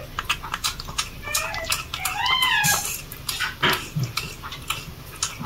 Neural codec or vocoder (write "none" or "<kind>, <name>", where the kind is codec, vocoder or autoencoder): none